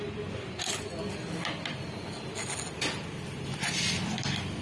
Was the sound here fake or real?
real